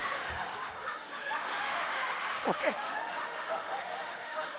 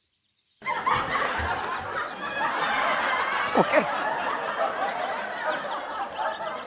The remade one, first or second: first